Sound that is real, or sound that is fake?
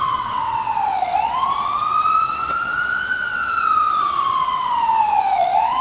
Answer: fake